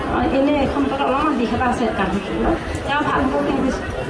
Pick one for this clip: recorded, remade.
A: recorded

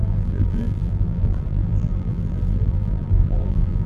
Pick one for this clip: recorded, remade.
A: remade